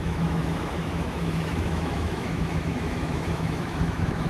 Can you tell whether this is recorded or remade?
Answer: remade